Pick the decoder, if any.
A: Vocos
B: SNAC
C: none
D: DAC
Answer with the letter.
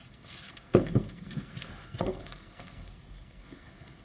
B